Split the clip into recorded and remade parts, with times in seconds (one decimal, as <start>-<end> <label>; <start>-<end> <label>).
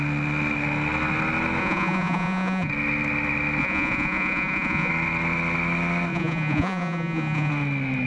0.0-1.6 recorded; 1.6-2.7 remade; 2.7-3.6 recorded; 3.6-4.9 remade; 4.9-6.1 recorded; 6.1-7.5 remade; 7.5-8.1 recorded